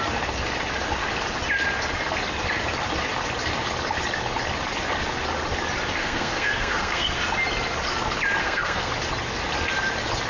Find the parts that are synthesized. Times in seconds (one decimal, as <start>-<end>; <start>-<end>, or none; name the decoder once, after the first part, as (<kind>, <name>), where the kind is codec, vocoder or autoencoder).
6.0-7.2 (codec, SNAC); 8.4-8.9